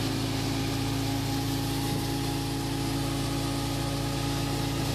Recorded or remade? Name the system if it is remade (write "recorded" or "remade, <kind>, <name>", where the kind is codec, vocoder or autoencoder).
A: recorded